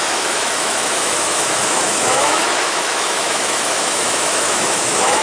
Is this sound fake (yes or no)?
yes